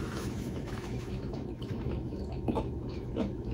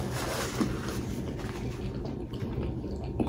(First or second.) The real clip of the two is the second